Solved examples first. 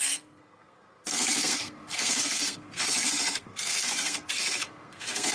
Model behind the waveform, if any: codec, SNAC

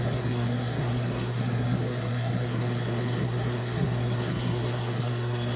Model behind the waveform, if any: codec, SNAC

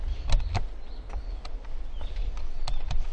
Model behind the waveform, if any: none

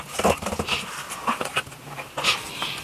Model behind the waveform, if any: none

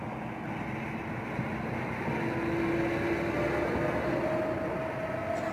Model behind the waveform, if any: none